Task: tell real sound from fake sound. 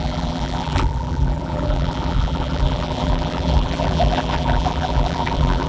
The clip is fake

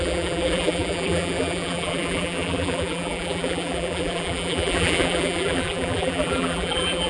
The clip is fake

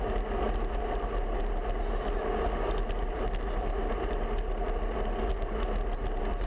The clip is real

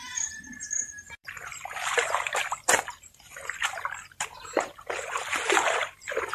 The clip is fake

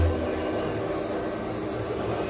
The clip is real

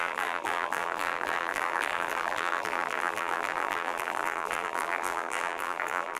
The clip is fake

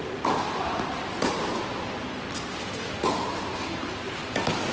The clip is real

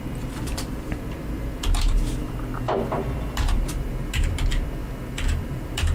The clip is fake